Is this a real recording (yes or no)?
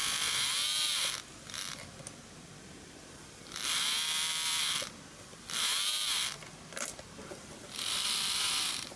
no